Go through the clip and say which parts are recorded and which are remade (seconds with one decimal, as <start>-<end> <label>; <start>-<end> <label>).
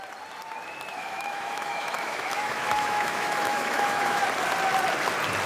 0.0-0.9 recorded; 0.9-4.2 remade; 4.2-5.5 recorded